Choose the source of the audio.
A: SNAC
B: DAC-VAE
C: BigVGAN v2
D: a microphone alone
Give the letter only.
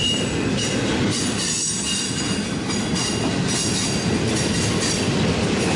D